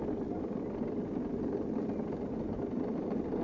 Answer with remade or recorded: recorded